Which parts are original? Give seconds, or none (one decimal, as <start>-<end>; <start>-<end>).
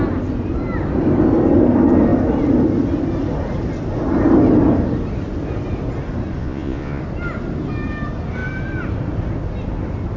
0.0-6.4; 7.0-10.2